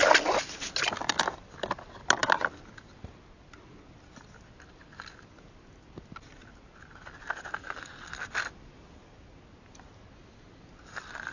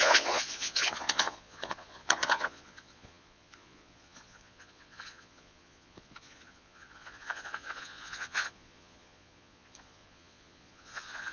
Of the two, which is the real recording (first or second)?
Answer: first